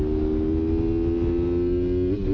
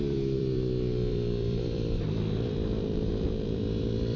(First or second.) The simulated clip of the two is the second